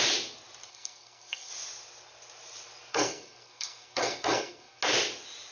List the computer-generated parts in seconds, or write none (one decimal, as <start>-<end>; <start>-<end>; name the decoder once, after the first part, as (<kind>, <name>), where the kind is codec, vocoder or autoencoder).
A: 0.7-1.5 (codec, SNAC); 2.9-4.8